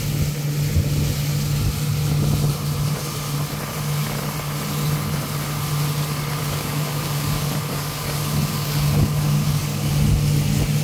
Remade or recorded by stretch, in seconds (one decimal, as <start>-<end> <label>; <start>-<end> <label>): 0.0-6.4 recorded; 6.4-9.9 remade; 9.9-10.8 recorded